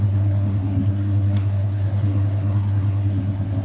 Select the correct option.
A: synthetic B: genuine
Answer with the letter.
A